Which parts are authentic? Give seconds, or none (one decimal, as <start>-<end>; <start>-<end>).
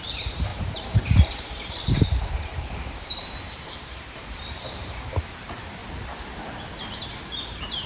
5.8-7.2